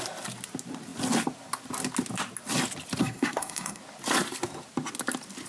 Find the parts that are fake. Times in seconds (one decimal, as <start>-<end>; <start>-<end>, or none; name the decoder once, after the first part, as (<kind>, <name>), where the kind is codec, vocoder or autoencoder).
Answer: 3.0-3.8 (codec, SNAC)